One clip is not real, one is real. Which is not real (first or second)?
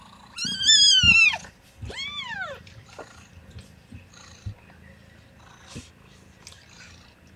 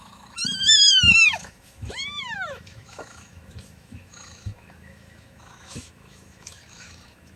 second